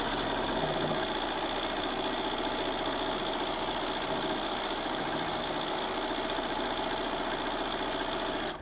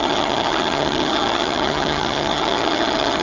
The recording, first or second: first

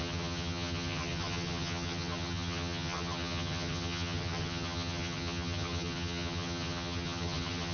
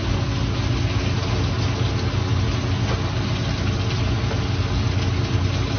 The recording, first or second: second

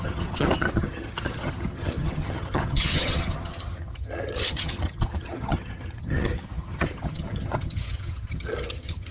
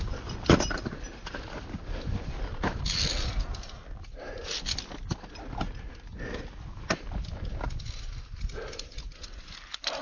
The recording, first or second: second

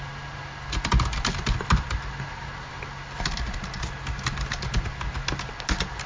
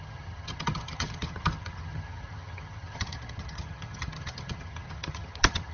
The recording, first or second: first